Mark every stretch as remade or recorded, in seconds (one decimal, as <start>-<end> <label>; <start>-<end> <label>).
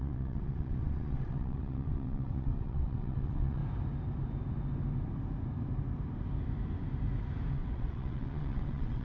0.0-3.6 remade; 3.6-7.5 recorded; 7.5-9.0 remade